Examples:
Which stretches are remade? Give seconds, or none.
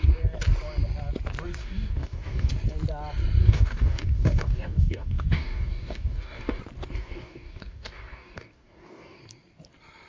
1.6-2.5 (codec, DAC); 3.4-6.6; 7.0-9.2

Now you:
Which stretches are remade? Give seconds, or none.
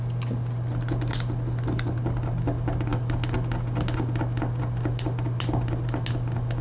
none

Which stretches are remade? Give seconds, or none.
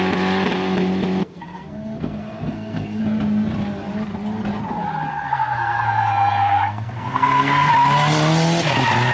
1.2-3.0 (codec, SNAC); 5.1-7.7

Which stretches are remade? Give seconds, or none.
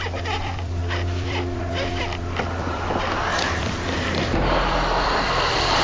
0.0-5.8 (vocoder, BigVGAN v2)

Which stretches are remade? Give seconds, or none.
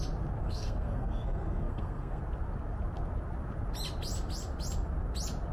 0.4-2.2 (codec, SNAC)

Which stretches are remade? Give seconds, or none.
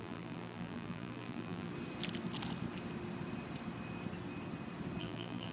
0.0-1.7 (vocoder, BigVGAN v2); 5.0-5.5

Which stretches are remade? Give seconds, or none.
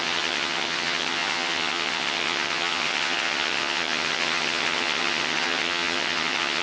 0.0-6.6 (vocoder, HiFi-GAN)